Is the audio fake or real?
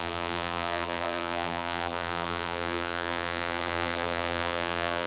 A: fake